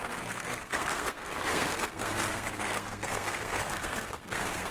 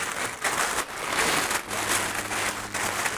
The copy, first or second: first